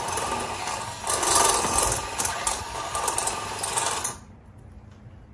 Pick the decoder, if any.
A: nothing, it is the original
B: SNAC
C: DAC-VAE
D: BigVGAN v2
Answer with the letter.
A